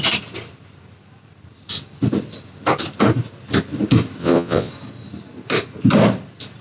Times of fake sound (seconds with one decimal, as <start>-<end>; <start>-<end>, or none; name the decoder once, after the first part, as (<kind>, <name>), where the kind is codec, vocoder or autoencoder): 4.2-4.7 (vocoder, WaveNeXt)